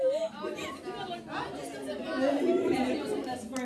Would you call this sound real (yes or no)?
yes